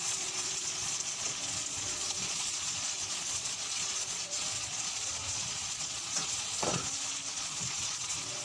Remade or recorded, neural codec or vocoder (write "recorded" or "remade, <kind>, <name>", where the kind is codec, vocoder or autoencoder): remade, vocoder, Vocos